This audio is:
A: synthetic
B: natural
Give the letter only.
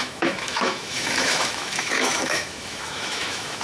A